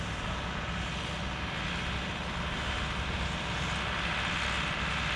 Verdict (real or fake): real